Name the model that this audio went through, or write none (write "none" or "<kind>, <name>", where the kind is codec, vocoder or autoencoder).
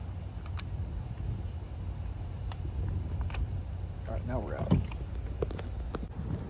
none